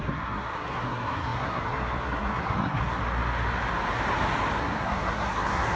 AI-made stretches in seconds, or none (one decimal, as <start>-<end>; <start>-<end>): 0.0-3.0; 4.6-5.8